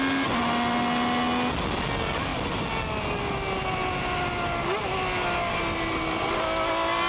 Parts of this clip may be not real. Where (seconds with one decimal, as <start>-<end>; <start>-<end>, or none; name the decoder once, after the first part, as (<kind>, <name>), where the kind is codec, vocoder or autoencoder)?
none